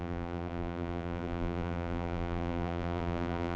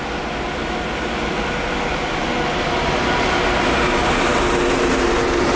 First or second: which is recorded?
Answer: second